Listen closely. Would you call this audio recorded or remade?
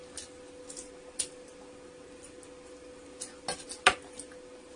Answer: recorded